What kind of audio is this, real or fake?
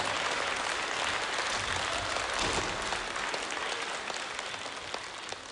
real